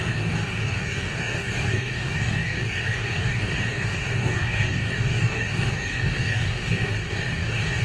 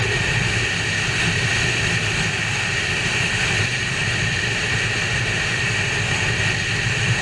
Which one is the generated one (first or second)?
first